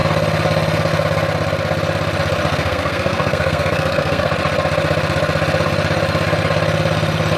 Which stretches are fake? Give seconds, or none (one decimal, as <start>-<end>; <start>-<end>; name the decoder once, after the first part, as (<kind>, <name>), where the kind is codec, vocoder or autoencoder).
2.5-4.3 (codec, SNAC)